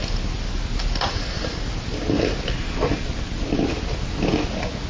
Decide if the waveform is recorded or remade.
recorded